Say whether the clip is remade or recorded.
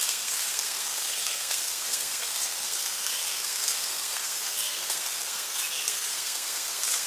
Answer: remade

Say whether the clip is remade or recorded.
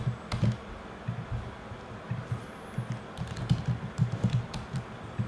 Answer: recorded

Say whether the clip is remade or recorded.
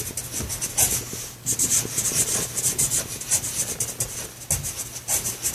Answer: recorded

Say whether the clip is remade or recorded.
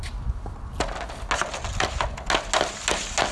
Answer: recorded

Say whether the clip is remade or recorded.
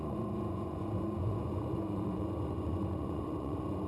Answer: remade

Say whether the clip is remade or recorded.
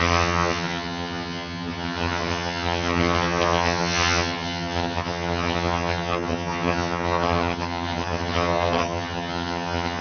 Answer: remade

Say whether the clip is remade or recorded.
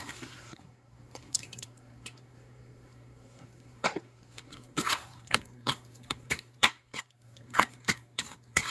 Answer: remade